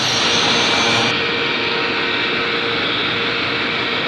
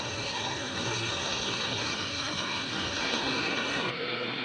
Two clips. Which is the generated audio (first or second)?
second